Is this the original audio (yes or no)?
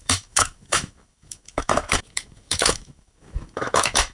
no